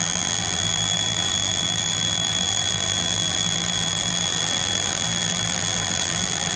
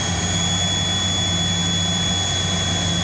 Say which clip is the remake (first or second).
first